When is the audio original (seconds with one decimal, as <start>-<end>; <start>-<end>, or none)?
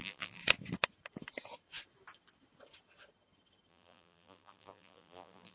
0.4-3.7